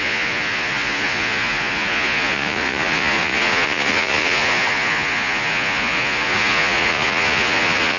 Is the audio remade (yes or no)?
yes